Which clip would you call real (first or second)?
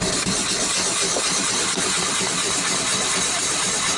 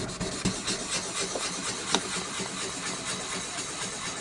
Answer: second